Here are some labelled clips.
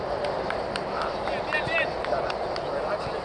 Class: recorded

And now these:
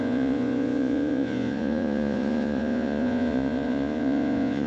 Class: remade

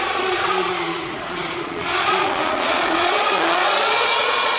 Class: remade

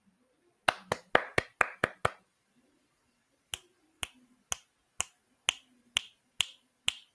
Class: recorded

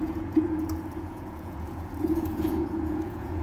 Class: remade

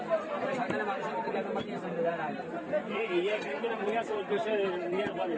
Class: recorded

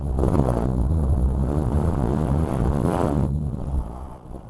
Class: remade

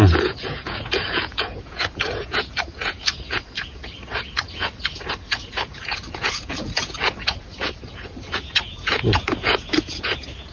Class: remade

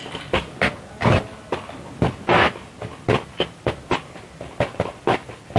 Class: recorded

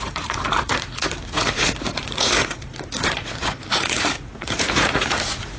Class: remade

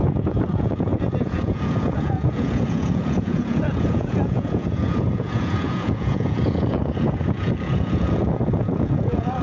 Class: remade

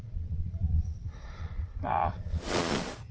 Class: remade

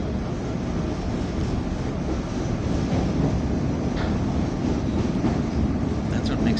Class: recorded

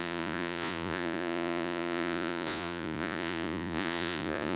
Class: remade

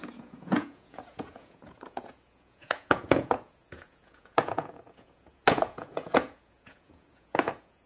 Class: remade